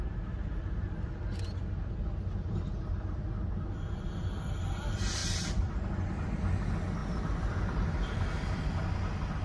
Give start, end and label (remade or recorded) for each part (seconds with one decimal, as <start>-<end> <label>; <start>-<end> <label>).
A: 0.0-5.2 recorded; 5.2-5.8 remade; 5.8-7.0 recorded; 7.0-8.5 remade; 8.5-9.4 recorded

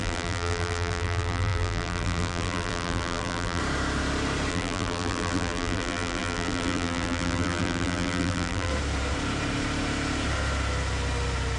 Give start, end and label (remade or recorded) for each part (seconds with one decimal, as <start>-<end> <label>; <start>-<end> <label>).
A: 0.0-3.6 remade; 3.6-4.5 recorded; 4.5-8.7 remade; 8.7-11.6 recorded